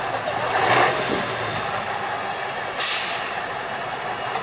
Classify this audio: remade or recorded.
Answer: recorded